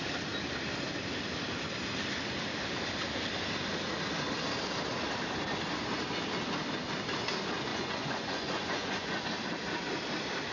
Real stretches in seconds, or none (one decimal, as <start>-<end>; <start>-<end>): 0.0-7.7; 9.2-10.5